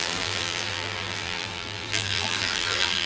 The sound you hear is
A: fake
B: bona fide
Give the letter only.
A